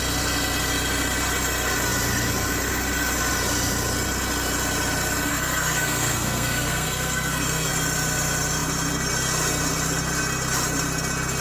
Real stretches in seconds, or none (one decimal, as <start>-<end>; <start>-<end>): 0.0-5.3; 7.7-11.4

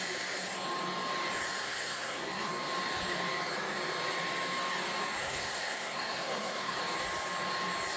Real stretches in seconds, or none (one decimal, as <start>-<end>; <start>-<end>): 0.0-1.6; 2.5-5.2; 6.8-8.0

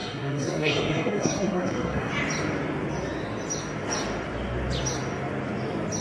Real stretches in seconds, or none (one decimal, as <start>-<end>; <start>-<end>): 2.1-6.0

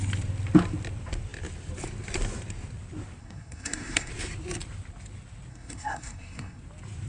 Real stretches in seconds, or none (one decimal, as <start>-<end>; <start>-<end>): 0.0-3.2; 4.1-5.5; 6.6-7.1

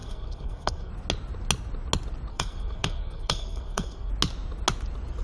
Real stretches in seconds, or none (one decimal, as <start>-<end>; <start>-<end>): 0.9-2.3; 4.1-5.2

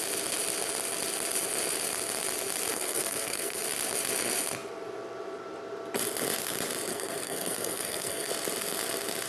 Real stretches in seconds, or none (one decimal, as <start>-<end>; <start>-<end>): 0.0-2.7; 3.6-6.9; 8.3-9.3

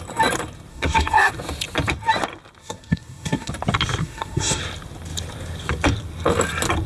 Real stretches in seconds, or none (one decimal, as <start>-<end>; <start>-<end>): 0.0-0.7; 1.3-2.6; 3.5-4.0; 4.6-6.9

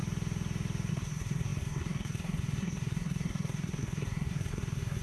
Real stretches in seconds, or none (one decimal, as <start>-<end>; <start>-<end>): 0.0-0.9